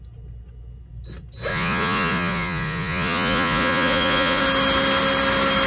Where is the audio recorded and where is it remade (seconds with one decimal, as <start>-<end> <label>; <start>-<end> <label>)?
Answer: 0.0-1.5 recorded; 1.5-4.4 remade; 4.4-5.7 recorded